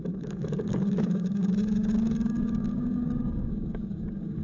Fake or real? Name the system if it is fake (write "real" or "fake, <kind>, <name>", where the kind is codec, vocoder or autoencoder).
fake, codec, DAC